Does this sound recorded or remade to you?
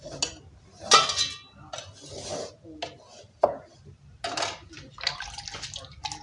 recorded